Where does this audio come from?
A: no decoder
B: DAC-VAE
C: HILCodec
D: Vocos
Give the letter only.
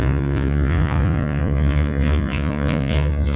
D